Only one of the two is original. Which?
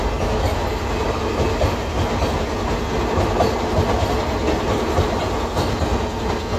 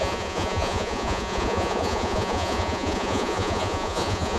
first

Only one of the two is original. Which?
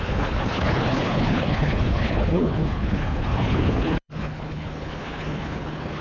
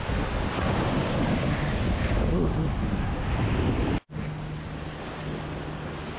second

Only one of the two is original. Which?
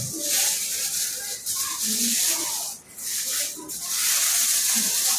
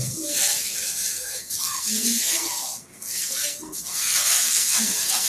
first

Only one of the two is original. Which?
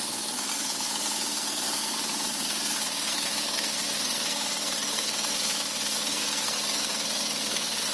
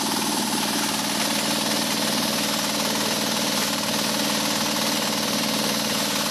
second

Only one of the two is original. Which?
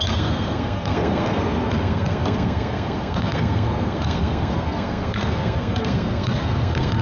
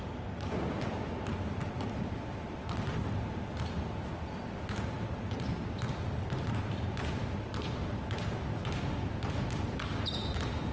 second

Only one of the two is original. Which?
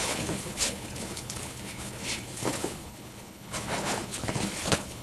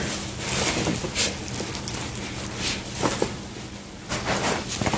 second